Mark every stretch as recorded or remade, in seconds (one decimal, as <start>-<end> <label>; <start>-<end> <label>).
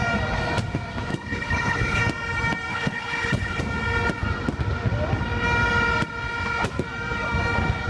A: 0.0-1.1 recorded; 1.1-2.0 remade; 2.0-2.7 recorded; 2.7-3.6 remade; 3.6-7.9 recorded